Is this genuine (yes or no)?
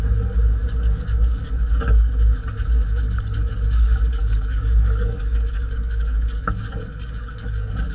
no